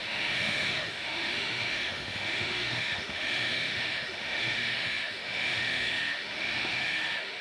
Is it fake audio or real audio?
fake